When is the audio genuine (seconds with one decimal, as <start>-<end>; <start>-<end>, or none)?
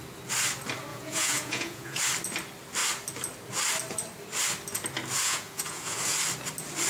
0.0-0.9; 2.0-5.2; 6.0-6.9